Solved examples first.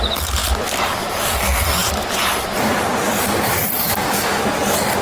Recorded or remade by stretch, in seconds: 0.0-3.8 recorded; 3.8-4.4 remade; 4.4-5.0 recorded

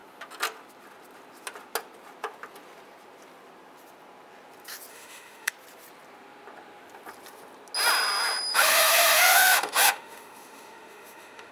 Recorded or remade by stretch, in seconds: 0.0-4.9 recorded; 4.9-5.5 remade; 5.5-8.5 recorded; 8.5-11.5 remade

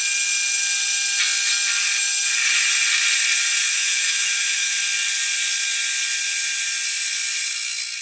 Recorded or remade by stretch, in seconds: 0.0-3.6 recorded; 3.6-4.8 remade; 4.8-8.0 recorded

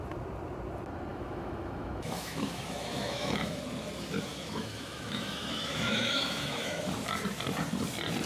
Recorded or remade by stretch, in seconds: 0.0-1.1 recorded; 1.1-3.6 remade; 3.6-4.3 recorded; 4.3-6.8 remade; 6.8-8.3 recorded